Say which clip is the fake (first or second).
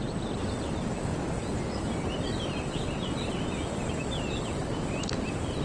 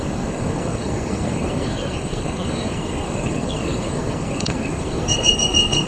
second